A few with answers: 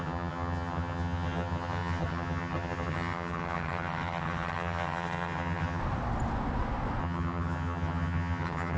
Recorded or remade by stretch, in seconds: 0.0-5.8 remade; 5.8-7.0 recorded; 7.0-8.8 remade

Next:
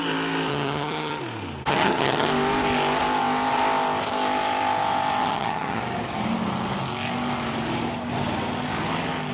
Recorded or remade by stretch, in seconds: 0.0-0.5 recorded; 0.5-1.2 remade; 1.2-1.7 recorded; 1.7-2.3 remade; 2.3-5.2 recorded; 5.2-5.8 remade; 5.8-9.3 recorded

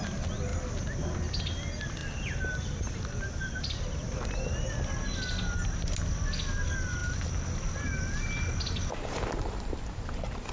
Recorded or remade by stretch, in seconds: 0.0-10.5 recorded

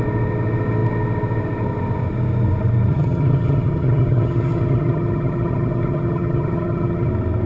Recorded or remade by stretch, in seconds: 0.0-2.9 recorded; 2.9-7.1 remade; 7.1-7.5 recorded

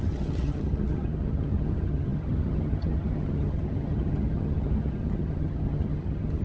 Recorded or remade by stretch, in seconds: 0.0-6.4 remade

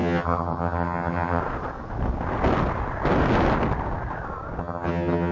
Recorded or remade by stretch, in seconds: 0.0-1.4 remade; 1.4-4.6 recorded; 4.6-5.3 remade